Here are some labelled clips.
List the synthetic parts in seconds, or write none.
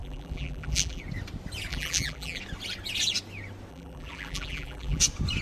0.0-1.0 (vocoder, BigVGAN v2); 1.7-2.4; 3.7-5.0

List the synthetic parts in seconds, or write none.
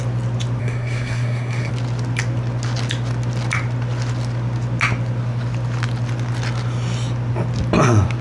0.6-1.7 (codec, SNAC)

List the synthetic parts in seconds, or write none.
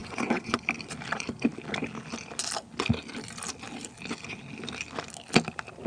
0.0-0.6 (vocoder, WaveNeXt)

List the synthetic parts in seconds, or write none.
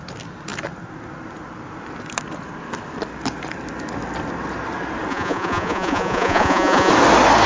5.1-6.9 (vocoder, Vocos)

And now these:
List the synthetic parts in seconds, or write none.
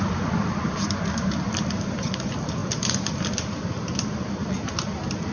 none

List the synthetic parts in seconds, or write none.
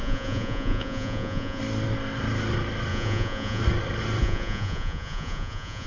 0.0-1.6 (vocoder, Vocos); 2.9-3.6; 4.2-5.9